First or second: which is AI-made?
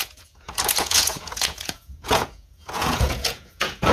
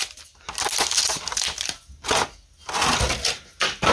first